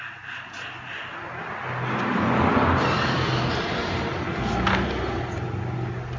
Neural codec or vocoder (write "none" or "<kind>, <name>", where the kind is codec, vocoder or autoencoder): none